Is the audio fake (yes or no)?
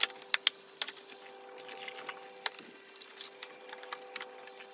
no